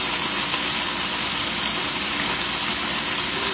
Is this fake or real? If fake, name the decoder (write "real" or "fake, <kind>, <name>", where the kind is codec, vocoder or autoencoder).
real